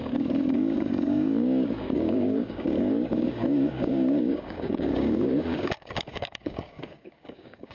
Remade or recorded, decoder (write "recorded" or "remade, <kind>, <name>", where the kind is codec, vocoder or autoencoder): remade, codec, DAC